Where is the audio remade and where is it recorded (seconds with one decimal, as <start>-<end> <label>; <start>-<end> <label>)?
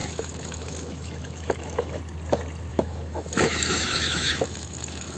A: 0.0-2.0 remade; 2.0-2.7 recorded; 2.7-5.2 remade